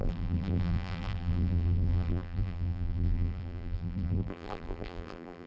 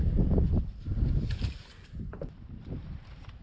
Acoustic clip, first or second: second